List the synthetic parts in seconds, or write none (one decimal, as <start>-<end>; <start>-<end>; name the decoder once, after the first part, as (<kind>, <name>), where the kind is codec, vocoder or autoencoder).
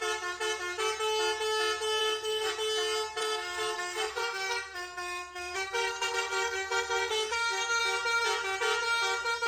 2.0-2.5 (codec, SNAC); 3.2-7.8